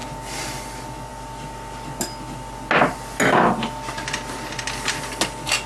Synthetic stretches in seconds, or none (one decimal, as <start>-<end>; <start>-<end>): none